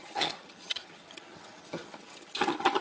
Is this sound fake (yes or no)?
yes